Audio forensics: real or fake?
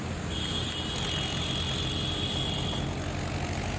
real